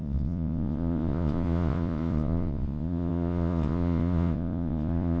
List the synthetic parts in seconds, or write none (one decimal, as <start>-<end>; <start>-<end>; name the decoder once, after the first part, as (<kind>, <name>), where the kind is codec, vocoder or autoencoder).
0.0-5.2 (vocoder, Vocos)